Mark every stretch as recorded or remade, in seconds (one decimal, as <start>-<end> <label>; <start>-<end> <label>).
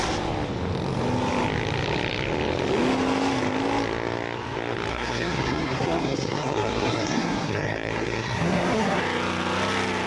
0.0-4.9 recorded; 4.9-9.0 remade; 9.0-10.1 recorded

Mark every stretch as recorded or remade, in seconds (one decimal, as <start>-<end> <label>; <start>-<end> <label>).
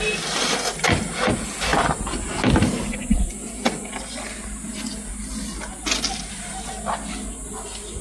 0.0-8.0 recorded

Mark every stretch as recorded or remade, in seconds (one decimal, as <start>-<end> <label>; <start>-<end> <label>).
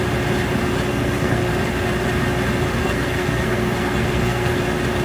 0.0-0.9 recorded; 0.9-1.5 remade; 1.5-2.8 recorded; 2.8-4.6 remade; 4.6-5.0 recorded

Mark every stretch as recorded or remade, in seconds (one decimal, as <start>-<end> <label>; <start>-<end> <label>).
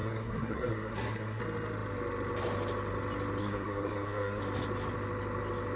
0.0-1.4 remade; 1.4-3.4 recorded; 3.4-4.4 remade; 4.4-5.8 recorded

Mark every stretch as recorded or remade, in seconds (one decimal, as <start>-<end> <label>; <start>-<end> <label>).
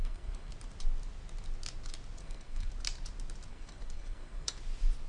0.0-0.5 remade; 0.5-2.2 recorded; 2.2-2.7 remade; 2.7-3.5 recorded; 3.5-4.6 remade; 4.6-5.1 recorded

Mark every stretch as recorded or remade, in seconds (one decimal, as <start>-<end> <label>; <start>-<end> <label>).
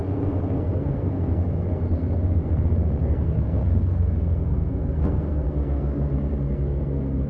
0.0-7.3 remade